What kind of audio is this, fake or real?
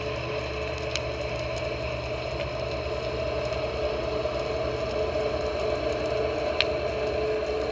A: real